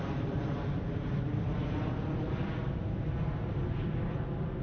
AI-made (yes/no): no